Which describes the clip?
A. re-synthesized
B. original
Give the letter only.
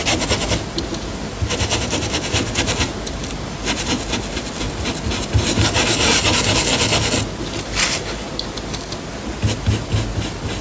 B